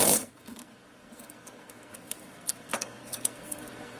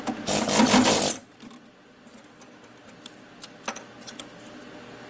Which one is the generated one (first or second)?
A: first